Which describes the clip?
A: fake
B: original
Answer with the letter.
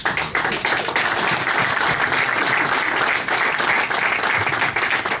B